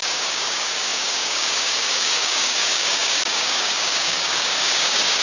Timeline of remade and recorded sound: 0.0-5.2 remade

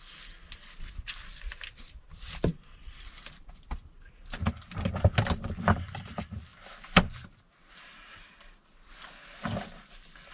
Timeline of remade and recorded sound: 0.0-10.3 recorded